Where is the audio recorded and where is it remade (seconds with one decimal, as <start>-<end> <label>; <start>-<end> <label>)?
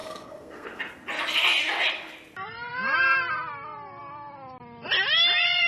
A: 0.0-0.8 remade; 0.8-5.7 recorded